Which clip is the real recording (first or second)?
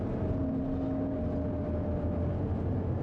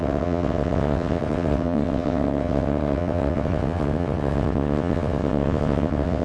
first